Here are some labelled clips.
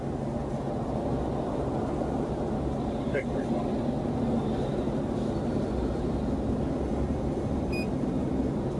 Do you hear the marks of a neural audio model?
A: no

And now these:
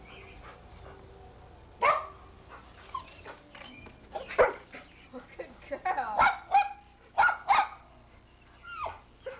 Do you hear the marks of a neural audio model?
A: no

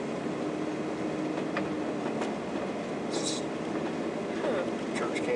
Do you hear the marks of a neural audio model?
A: no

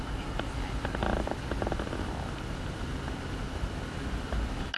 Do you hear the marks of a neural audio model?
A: no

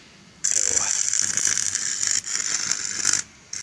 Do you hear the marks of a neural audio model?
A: no